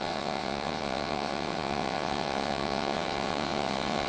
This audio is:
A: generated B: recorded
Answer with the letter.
A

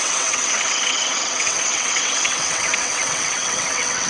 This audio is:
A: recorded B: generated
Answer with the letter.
B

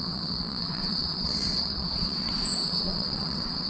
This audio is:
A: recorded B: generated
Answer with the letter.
B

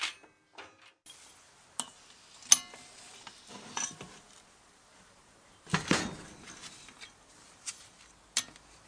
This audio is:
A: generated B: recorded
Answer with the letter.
B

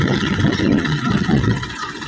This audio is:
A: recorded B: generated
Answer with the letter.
B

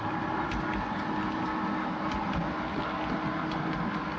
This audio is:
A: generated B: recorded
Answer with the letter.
B